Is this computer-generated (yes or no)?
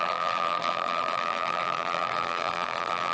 yes